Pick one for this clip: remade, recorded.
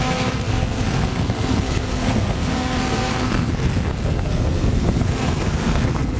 remade